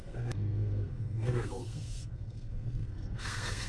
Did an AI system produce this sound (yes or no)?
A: yes